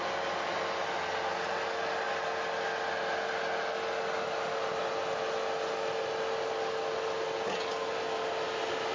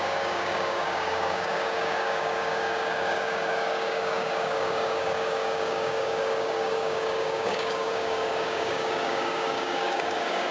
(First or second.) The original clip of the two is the first